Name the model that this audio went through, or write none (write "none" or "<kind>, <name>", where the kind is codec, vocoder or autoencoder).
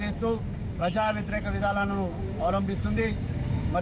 codec, DAC